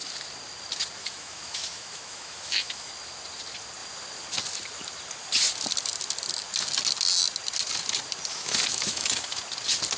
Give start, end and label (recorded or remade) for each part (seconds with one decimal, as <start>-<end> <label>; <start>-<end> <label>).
0.0-1.0 recorded; 1.0-2.9 remade; 2.9-8.3 recorded; 8.3-9.4 remade; 9.4-10.0 recorded